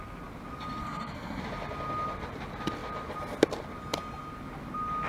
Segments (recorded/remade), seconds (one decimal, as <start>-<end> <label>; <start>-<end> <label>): 0.0-0.8 recorded; 0.8-1.4 remade; 1.4-5.1 recorded